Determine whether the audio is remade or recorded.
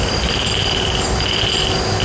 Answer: recorded